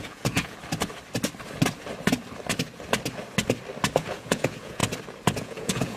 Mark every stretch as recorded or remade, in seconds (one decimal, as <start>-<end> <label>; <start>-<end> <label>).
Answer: 0.0-0.6 remade; 0.6-4.0 recorded; 4.0-4.8 remade; 4.8-5.4 recorded; 5.4-6.0 remade